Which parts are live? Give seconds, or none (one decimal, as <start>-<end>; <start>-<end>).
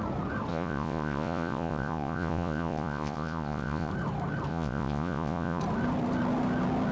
0.0-0.5; 3.9-4.5; 5.6-6.9